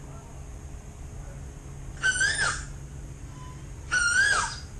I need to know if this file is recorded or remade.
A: recorded